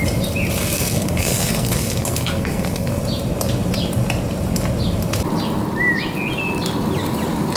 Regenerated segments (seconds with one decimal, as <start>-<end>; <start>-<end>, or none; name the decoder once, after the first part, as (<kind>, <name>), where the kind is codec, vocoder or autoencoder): 0.6-3.0 (codec, SNAC)